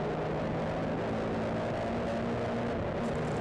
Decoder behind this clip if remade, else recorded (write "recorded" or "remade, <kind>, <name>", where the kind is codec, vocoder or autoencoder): recorded